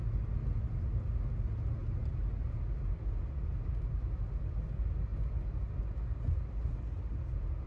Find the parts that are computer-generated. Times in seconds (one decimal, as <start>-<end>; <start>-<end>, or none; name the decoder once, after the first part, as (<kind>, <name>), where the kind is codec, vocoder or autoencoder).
none